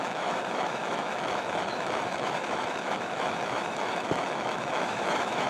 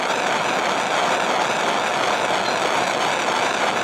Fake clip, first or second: first